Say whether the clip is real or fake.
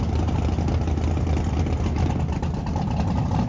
real